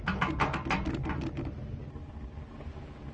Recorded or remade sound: recorded